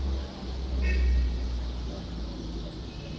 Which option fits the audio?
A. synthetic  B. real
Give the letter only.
B